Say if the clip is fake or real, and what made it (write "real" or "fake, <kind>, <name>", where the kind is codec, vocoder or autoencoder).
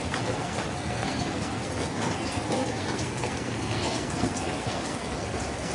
fake, codec, SNAC